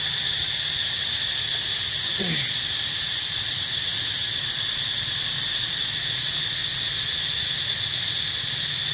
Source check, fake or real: real